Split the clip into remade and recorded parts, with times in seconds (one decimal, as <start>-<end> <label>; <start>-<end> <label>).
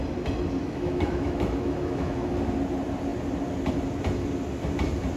0.0-0.6 recorded; 0.6-2.3 remade; 2.3-5.2 recorded